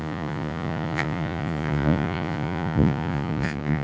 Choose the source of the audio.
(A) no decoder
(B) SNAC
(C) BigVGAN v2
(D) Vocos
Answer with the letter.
D